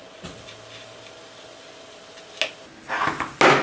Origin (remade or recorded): recorded